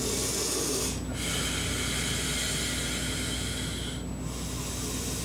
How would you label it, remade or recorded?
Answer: recorded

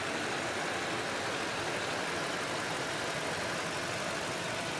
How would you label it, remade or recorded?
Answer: recorded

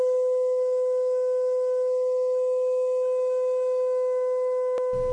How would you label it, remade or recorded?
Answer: recorded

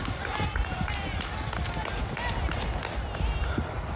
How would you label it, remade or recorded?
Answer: recorded